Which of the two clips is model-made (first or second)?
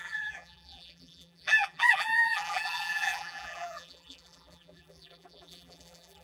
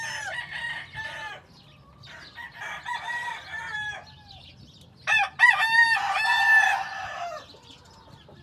first